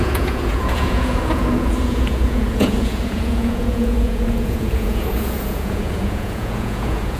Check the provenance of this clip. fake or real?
fake